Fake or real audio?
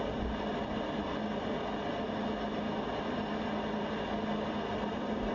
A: real